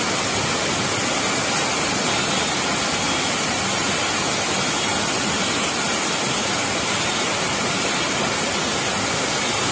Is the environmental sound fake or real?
real